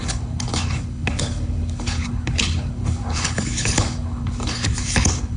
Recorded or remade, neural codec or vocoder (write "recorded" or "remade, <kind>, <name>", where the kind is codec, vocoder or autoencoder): remade, codec, HILCodec